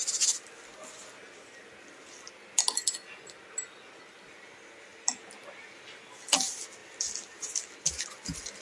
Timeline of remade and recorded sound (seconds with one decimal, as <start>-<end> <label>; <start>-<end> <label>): 0.0-4.9 recorded; 4.9-5.7 remade; 5.7-6.8 recorded; 6.8-7.4 remade; 7.4-8.6 recorded